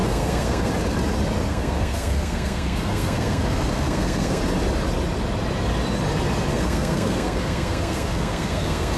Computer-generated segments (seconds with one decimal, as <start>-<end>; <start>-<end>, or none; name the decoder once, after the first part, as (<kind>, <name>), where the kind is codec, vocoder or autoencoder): 0.0-0.7 (codec, SNAC); 1.5-4.4; 6.5-9.0